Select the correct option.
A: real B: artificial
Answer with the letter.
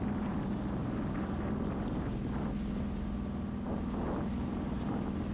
A